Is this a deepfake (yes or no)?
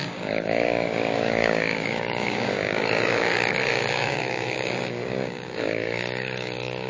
yes